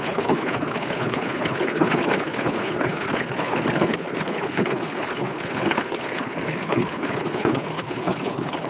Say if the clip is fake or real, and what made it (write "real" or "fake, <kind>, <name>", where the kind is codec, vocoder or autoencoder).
fake, codec, HILCodec